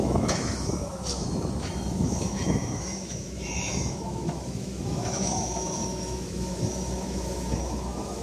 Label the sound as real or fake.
fake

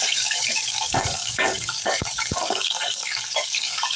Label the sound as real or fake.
fake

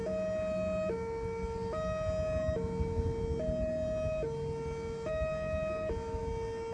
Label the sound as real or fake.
real